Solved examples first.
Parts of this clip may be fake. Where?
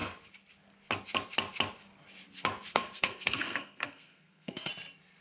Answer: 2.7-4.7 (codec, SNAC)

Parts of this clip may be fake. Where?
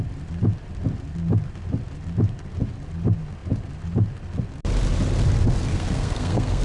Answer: 5.7-6.6 (codec, SNAC)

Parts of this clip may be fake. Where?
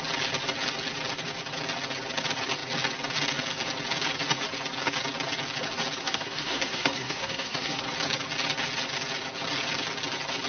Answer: 6.0-7.8 (codec, SNAC)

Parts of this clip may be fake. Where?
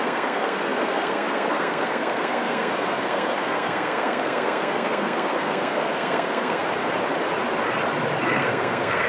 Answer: 0.0-6.6 (codec, SNAC); 8.3-9.1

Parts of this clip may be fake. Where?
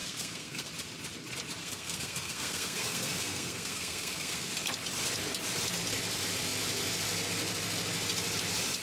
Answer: 0.0-0.7 (codec, SNAC); 1.6-4.5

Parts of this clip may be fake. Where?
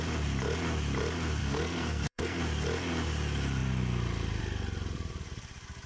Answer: 1.4-2.4 (codec, SNAC)